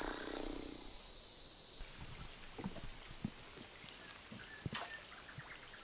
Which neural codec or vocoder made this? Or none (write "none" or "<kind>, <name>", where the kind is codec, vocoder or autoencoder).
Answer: none